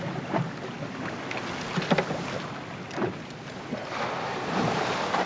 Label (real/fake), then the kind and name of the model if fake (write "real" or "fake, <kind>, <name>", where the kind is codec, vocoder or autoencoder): real